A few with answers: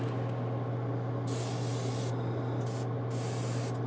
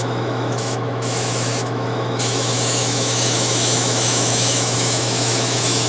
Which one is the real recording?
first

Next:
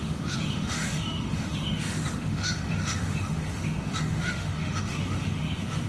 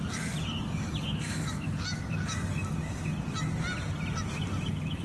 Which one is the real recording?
second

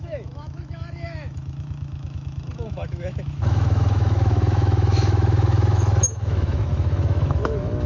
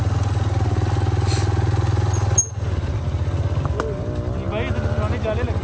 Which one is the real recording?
second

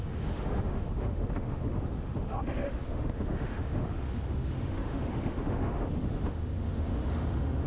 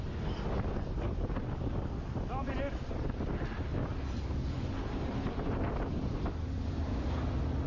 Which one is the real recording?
second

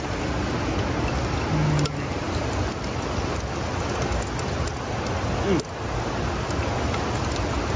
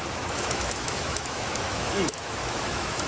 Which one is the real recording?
first